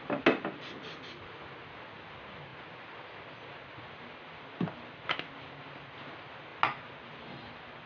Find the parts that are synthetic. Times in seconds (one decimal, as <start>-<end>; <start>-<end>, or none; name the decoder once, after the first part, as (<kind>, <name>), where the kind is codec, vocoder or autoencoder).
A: none